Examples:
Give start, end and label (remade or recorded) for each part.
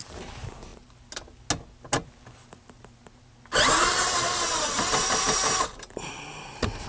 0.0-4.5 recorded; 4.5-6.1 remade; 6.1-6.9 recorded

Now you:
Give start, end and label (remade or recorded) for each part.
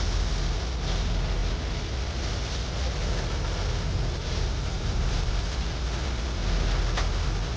0.0-4.2 recorded; 4.2-5.4 remade; 5.4-7.6 recorded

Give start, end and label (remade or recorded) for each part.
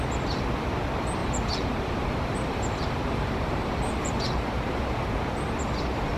0.0-1.2 recorded; 1.2-4.9 remade; 4.9-6.2 recorded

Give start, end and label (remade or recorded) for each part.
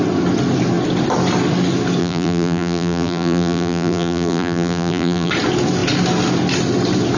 0.0-2.0 recorded; 2.0-5.3 remade; 5.3-7.2 recorded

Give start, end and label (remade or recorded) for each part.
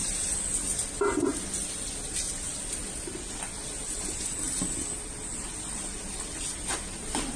0.0-7.4 recorded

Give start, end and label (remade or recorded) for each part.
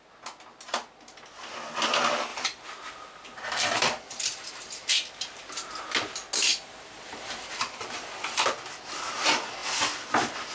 0.0-2.3 recorded; 2.3-4.9 remade; 4.9-6.5 recorded; 6.5-8.4 remade; 8.4-10.5 recorded